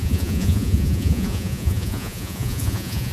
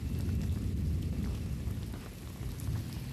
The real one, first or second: second